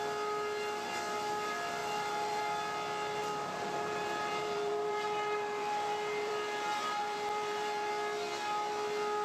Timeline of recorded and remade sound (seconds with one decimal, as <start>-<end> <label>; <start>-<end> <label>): 0.0-1.8 recorded; 1.8-2.4 remade; 2.4-3.2 recorded; 3.2-7.9 remade; 7.9-9.2 recorded